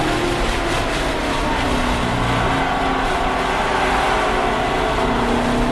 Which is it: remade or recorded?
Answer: recorded